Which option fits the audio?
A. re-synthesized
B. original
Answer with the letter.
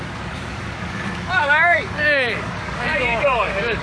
A